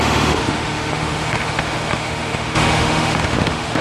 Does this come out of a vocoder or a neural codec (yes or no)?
yes